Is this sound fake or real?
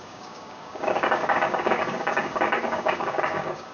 fake